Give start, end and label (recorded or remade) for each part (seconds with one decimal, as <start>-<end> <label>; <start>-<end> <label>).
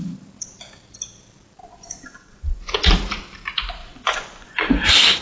0.0-1.6 recorded; 1.6-2.7 remade; 2.7-3.8 recorded; 3.8-4.8 remade; 4.8-5.2 recorded